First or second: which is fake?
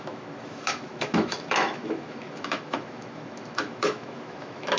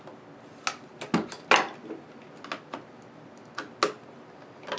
first